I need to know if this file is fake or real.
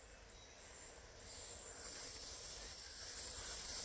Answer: real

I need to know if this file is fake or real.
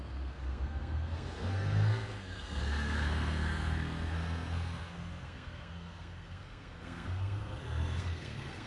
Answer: fake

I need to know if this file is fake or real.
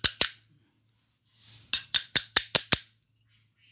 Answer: real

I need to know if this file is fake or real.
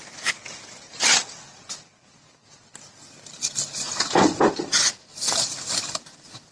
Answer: real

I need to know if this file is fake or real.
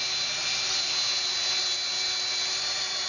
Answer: real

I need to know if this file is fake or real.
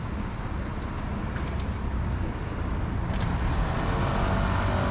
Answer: real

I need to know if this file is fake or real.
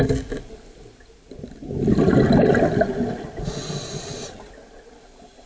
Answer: real